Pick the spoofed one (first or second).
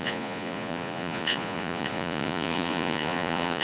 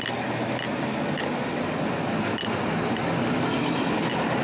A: first